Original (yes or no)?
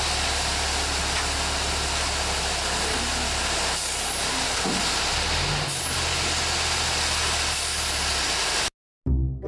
yes